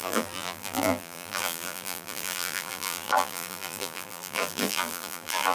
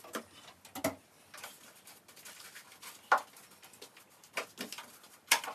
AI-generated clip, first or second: first